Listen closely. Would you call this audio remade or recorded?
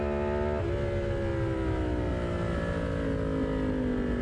recorded